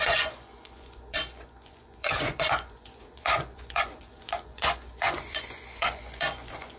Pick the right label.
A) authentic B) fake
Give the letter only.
B